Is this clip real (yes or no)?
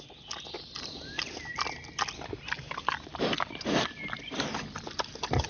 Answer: yes